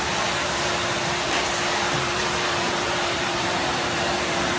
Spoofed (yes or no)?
yes